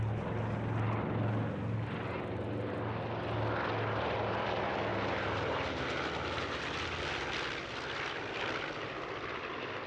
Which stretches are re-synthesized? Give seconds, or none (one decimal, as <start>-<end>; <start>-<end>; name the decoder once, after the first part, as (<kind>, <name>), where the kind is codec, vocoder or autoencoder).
none